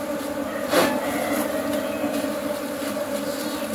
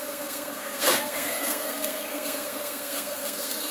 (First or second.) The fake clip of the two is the second